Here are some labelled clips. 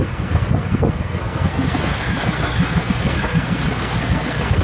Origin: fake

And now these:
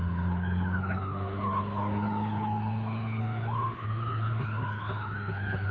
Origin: fake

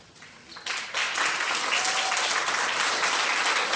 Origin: real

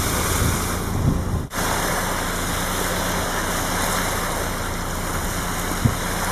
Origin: real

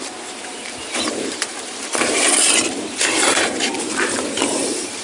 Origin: fake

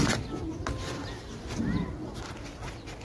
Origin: real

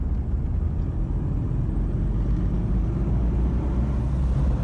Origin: real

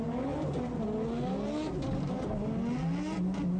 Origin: real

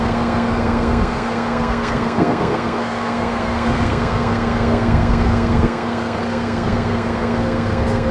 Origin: fake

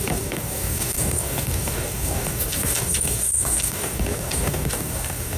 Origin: fake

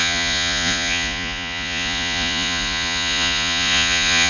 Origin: fake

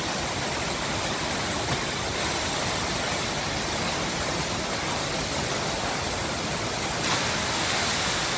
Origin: real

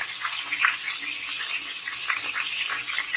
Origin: real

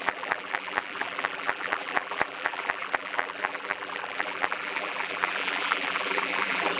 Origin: fake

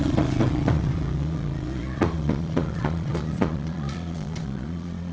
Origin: fake